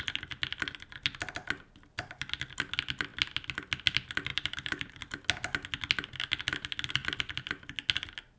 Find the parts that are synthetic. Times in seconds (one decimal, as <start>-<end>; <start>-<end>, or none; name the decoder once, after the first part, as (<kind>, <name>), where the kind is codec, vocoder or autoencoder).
4.3-5.0 (vocoder, BigVGAN v2)

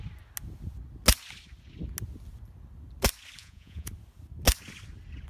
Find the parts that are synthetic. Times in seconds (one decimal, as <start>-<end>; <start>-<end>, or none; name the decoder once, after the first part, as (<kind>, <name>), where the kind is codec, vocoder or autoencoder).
3.4-3.9 (vocoder, Vocos)

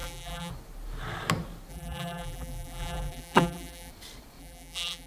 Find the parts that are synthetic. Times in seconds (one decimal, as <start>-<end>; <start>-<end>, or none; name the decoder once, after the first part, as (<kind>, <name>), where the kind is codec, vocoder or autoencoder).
0.0-0.5 (vocoder, BigVGAN v2); 1.7-3.9; 4.4-5.1

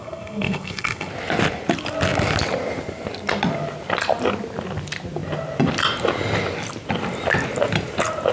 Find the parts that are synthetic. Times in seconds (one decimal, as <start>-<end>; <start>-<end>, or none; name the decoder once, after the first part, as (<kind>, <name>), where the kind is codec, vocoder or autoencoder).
0.0-1.1 (codec, SNAC)

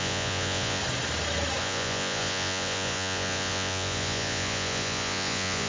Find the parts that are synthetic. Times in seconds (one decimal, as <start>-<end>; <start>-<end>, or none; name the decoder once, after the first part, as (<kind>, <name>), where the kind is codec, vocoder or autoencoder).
0.0-0.8 (vocoder, Vocos); 1.6-5.7

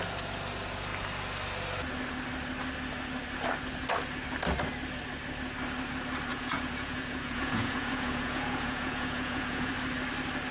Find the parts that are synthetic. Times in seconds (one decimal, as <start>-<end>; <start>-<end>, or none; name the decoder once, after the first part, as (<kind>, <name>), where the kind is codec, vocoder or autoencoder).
6.3-9.7 (vocoder, Vocos)

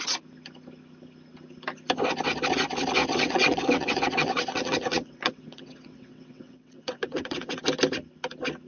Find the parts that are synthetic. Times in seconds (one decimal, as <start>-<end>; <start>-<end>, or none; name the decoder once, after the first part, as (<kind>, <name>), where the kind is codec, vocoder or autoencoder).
3.1-7.6 (vocoder, WaveNeXt)

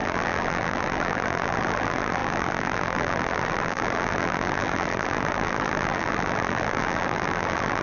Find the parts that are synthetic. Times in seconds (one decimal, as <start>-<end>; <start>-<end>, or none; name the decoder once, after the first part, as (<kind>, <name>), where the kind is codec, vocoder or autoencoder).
0.0-7.8 (vocoder, BigVGAN v2)